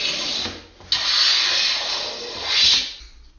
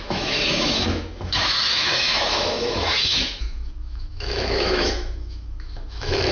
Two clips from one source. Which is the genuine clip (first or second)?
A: first